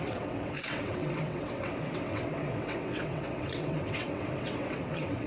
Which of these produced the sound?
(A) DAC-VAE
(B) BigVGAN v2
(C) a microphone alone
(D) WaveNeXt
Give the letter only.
D